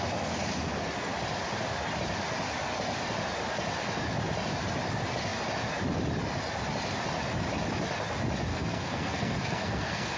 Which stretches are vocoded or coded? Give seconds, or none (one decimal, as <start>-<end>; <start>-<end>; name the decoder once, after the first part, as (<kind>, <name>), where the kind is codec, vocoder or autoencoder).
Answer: 8.5-10.2 (codec, SNAC)

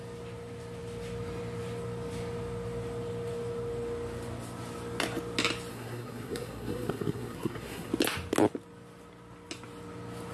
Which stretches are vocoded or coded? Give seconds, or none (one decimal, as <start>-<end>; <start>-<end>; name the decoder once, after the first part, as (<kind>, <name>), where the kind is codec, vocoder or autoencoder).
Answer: 5.7-7.9 (codec, SNAC)

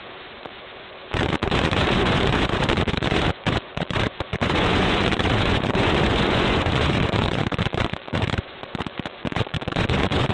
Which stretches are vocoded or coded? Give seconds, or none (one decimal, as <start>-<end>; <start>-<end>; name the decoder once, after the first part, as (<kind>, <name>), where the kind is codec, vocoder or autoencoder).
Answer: 0.0-10.3 (vocoder, Vocos)

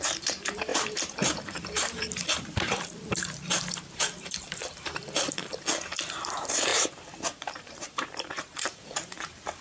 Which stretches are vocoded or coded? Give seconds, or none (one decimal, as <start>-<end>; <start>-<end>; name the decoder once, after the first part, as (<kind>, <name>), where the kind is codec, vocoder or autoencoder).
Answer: 0.0-5.4 (vocoder, BigVGAN v2); 6.1-9.6